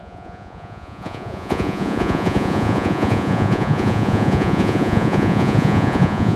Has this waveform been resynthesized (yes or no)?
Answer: yes